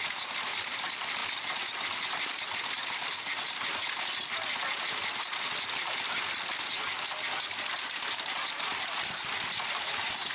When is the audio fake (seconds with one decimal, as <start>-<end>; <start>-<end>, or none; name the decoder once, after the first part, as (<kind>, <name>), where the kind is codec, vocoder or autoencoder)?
none

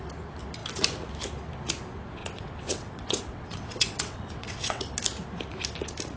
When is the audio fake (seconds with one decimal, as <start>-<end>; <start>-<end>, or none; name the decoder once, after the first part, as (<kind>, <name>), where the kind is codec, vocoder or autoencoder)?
2.2-4.8 (vocoder, WaveNeXt)